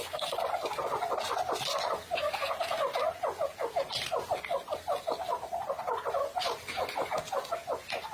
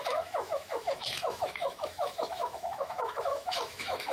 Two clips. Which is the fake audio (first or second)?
second